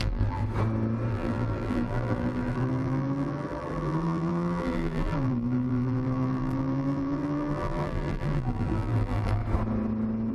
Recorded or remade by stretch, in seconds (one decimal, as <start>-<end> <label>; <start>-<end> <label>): 0.0-0.4 remade; 0.4-1.1 recorded; 1.1-9.4 remade; 9.4-10.3 recorded